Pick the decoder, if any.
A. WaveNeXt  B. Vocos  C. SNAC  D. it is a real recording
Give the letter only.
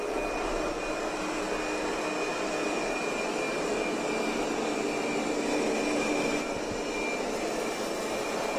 D